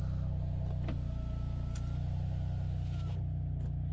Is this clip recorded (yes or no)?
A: yes